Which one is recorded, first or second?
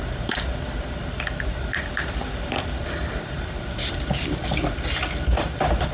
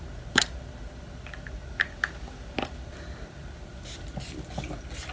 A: second